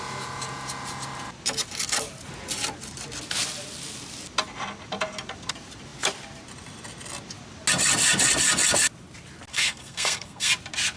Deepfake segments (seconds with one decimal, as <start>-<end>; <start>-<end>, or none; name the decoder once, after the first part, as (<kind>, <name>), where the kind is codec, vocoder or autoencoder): 9.5-10.5 (codec, SNAC)